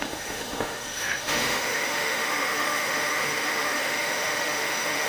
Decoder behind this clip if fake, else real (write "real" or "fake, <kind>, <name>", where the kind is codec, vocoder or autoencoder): fake, autoencoder, DAC-VAE